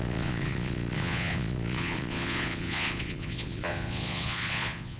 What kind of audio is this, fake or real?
fake